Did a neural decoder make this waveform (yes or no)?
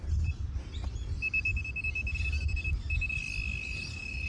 no